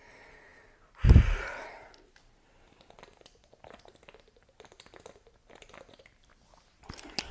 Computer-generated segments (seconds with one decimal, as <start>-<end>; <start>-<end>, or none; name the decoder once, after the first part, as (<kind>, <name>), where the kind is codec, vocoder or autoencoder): none